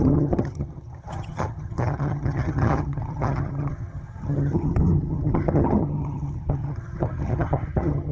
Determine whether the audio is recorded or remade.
remade